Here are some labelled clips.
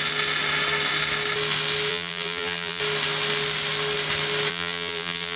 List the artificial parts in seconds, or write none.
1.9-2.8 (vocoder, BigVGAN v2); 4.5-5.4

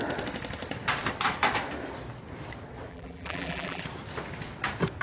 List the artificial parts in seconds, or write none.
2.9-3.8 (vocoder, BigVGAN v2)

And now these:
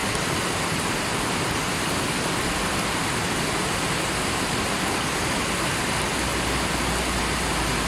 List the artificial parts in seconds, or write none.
none

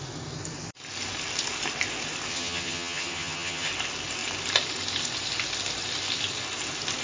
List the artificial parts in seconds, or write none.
2.3-3.7 (vocoder, HiFi-GAN)

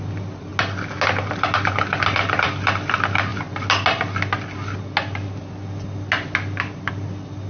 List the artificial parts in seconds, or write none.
none

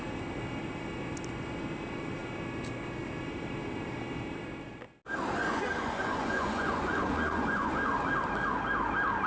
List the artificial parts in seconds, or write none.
5.4-7.7 (vocoder, Vocos)